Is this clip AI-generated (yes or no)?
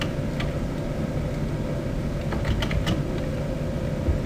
no